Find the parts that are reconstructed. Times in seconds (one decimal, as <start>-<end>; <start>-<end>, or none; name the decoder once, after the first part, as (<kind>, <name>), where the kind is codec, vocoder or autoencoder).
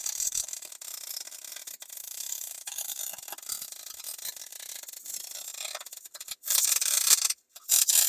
0.0-0.7 (codec, DAC); 2.0-3.0